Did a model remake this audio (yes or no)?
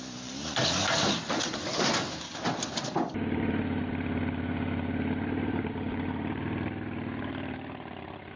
yes